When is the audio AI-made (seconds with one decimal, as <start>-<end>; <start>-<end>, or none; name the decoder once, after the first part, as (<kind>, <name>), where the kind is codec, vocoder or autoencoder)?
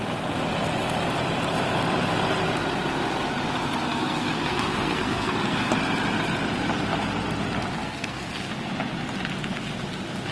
3.9-5.7 (codec, SNAC); 7.8-8.7